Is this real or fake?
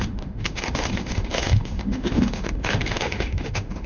fake